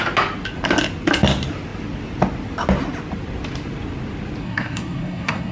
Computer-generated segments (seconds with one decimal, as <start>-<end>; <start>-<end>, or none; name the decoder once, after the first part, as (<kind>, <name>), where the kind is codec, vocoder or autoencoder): 4.4-5.5 (codec, SNAC)